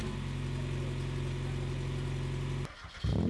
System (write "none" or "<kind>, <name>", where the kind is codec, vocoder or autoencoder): none